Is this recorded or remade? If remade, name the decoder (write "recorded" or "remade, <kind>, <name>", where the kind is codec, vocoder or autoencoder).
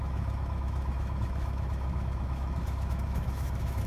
remade, autoencoder, DAC-VAE